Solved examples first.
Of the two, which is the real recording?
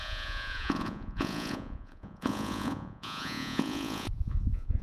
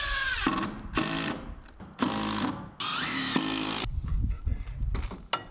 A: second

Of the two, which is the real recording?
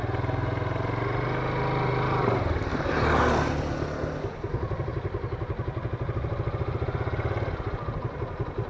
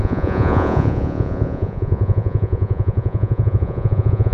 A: first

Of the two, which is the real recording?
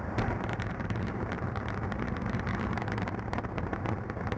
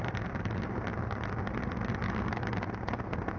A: second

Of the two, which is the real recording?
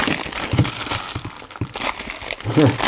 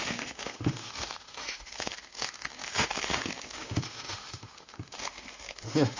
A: first